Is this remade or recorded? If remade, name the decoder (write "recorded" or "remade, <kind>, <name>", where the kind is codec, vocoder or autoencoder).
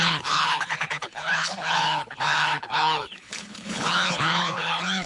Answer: remade, codec, HILCodec